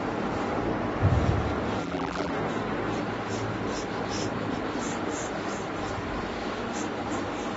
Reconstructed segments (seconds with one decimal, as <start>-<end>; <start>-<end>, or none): 1.8-2.3